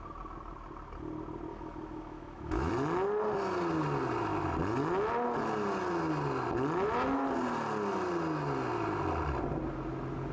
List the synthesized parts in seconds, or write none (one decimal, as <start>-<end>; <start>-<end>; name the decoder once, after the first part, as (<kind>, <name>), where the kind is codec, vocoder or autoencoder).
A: 1.5-2.7 (autoencoder, DAC-VAE)